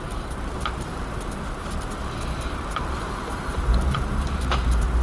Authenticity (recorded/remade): remade